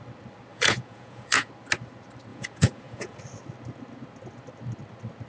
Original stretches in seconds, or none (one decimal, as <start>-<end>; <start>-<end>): 0.0-0.5; 1.5-2.3; 3.2-5.3